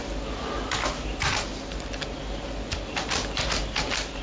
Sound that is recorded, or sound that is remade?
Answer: recorded